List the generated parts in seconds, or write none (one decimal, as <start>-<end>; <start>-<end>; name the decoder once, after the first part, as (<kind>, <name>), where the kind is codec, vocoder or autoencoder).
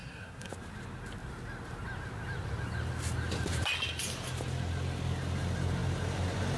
0.0-0.5 (codec, SNAC)